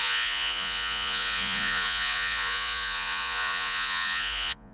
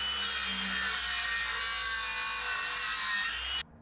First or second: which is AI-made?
first